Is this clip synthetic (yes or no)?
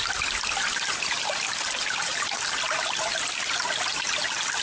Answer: no